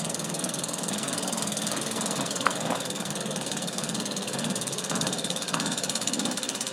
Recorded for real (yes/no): no